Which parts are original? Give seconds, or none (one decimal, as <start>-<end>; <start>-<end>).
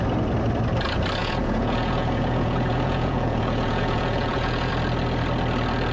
0.0-1.2; 4.7-5.9